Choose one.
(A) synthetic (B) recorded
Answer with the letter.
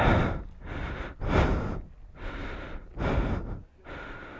B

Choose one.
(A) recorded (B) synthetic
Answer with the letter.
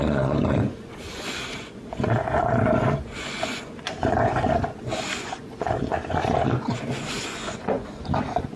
B